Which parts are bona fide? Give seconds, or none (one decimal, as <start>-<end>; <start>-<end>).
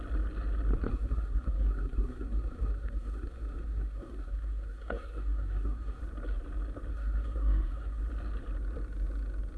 0.0-0.9; 6.0-6.9; 8.0-9.6